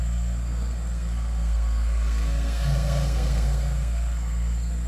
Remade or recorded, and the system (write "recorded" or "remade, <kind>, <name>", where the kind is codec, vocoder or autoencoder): remade, codec, SNAC